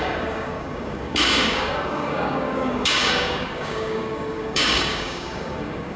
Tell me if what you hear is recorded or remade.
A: remade